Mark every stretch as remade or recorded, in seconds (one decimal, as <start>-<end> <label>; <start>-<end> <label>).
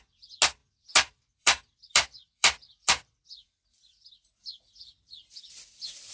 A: 0.0-0.6 recorded; 0.6-4.3 remade; 4.3-6.1 recorded